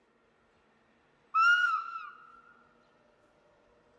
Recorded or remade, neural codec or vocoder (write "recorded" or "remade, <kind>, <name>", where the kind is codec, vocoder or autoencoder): recorded